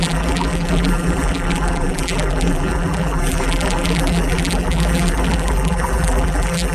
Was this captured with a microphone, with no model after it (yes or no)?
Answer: no